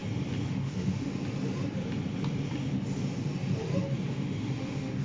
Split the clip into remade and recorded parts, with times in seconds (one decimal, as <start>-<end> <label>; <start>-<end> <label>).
0.0-0.5 recorded; 0.5-1.1 remade; 1.1-4.1 recorded; 4.1-5.0 remade